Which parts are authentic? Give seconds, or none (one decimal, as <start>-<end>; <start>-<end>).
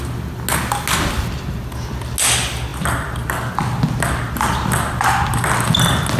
0.0-6.2